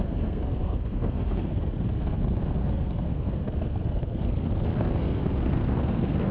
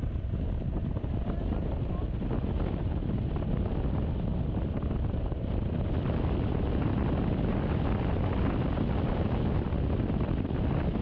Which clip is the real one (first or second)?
second